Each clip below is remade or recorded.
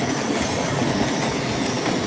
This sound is recorded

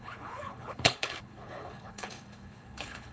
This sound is remade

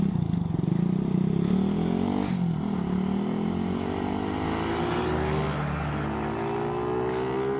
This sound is recorded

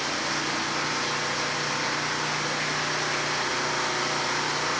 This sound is recorded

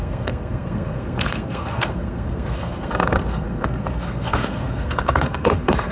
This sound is remade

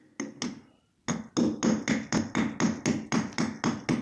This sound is recorded